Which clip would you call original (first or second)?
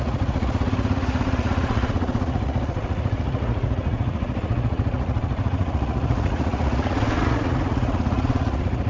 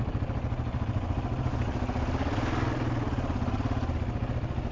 second